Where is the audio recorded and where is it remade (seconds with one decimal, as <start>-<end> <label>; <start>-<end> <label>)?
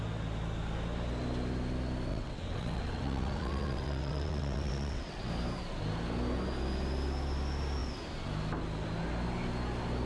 0.0-2.1 recorded; 2.1-5.3 remade; 5.3-10.1 recorded